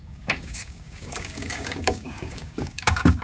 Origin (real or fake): fake